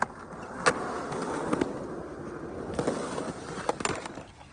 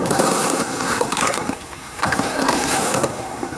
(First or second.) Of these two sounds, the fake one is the second